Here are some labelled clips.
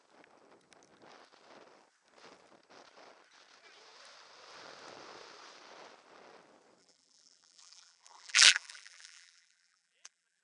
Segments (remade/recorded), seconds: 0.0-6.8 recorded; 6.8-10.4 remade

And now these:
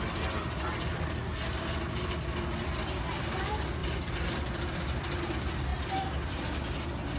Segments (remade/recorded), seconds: 0.0-3.8 recorded; 3.8-5.2 remade; 5.2-5.7 recorded; 5.7-6.6 remade; 6.6-7.2 recorded